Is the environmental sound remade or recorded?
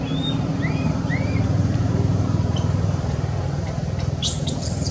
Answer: remade